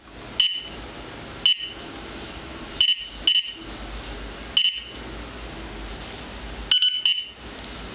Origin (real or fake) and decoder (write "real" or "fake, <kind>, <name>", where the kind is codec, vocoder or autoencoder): real